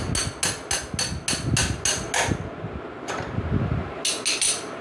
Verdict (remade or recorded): recorded